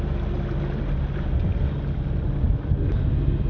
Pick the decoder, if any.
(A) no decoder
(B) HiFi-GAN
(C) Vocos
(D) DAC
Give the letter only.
A